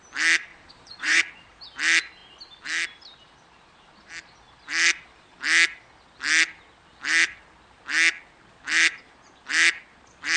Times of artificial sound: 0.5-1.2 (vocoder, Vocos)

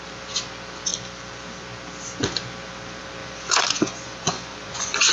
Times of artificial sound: 3.2-5.1 (vocoder, Vocos)

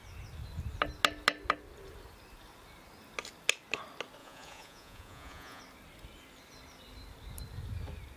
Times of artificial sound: 4.2-5.6 (vocoder, Vocos)

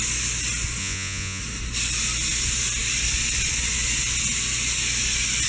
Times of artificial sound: 0.8-1.4 (vocoder, Vocos)

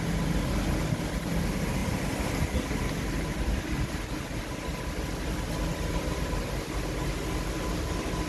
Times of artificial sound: none